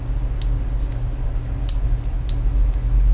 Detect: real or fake real